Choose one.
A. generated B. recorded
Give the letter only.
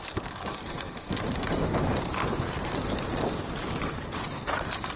A